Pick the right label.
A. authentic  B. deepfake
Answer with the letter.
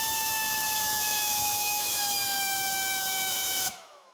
B